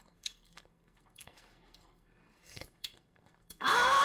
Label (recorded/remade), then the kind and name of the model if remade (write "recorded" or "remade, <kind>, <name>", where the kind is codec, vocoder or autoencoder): remade, codec, SNAC